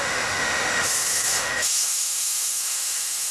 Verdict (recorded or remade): remade